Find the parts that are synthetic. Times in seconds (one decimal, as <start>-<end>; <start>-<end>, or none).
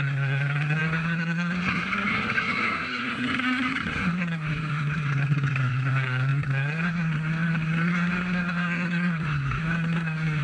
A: 0.0-10.4